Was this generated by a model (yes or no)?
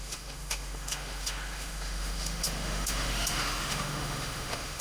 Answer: yes